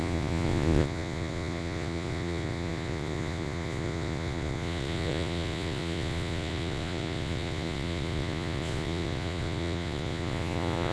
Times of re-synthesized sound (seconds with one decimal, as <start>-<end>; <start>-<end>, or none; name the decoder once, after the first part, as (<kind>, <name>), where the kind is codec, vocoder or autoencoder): 0.0-10.9 (vocoder, Vocos)